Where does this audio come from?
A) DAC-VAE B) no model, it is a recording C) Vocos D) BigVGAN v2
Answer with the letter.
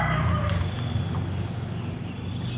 B